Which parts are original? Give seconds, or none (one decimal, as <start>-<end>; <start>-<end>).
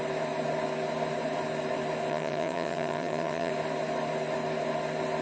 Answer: 0.0-2.1; 3.5-5.2